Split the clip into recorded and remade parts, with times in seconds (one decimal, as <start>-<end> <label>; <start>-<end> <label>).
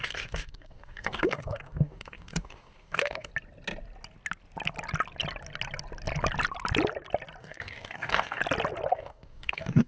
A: 0.0-3.3 remade; 3.3-7.4 recorded; 7.4-8.4 remade; 8.4-8.9 recorded; 8.9-9.9 remade